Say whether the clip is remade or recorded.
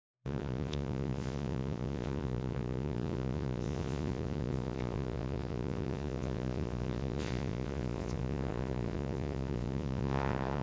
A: remade